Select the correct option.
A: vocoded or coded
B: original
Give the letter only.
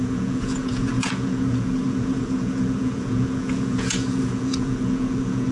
A